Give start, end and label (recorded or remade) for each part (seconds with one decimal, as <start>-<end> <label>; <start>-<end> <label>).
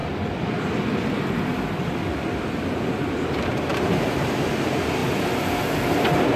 0.0-3.7 recorded; 3.7-4.5 remade; 4.5-6.4 recorded